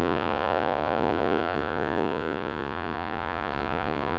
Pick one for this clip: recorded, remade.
remade